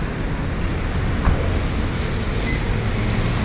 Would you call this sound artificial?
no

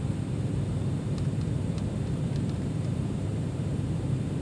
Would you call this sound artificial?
yes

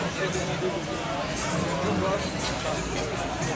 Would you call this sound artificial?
yes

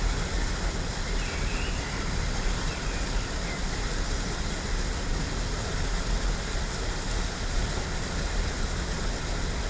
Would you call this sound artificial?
no